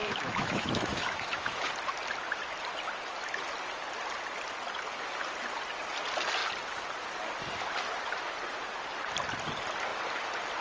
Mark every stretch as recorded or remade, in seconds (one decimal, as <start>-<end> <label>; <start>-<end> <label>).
0.0-1.7 remade; 1.7-10.6 recorded